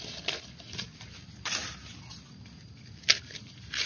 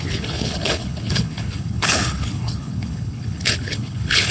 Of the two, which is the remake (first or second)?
second